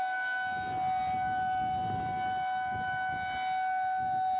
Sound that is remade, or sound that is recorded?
recorded